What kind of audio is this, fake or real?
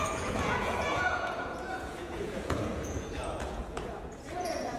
fake